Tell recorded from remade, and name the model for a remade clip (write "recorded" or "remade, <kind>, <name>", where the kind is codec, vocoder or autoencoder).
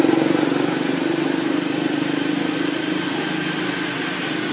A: recorded